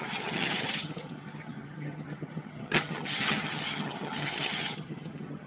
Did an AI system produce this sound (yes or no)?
yes